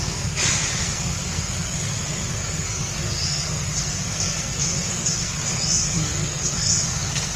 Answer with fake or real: fake